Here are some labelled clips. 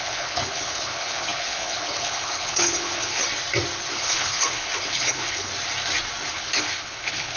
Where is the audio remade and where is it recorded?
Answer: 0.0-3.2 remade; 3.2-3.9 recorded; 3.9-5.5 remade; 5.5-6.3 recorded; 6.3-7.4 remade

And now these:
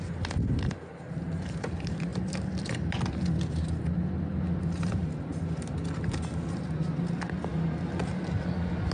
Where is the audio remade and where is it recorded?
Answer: 0.0-8.9 recorded

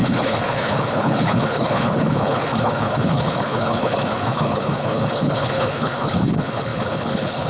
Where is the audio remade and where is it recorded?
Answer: 0.0-7.5 remade

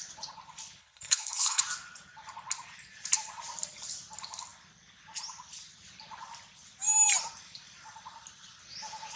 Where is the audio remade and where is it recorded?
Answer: 0.0-0.8 recorded; 0.8-1.6 remade; 1.6-9.2 recorded

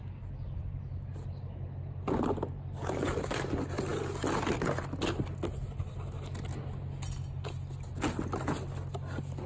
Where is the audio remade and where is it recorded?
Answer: 0.0-9.5 recorded